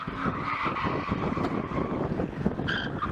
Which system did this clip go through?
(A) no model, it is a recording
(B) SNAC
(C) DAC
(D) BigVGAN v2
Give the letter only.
A